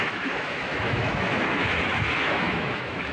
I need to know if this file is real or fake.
fake